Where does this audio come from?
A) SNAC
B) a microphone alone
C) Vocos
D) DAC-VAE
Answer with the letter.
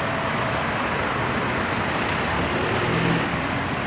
B